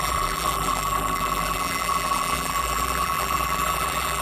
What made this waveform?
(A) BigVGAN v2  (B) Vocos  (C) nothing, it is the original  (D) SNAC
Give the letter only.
A